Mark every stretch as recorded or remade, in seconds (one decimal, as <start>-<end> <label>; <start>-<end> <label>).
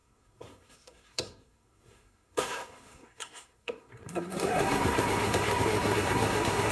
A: 0.0-6.7 remade